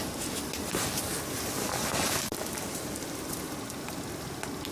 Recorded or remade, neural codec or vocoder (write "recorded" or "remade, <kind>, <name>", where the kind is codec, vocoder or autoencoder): recorded